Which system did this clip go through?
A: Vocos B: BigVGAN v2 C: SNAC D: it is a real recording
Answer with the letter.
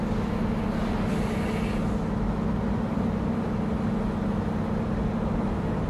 D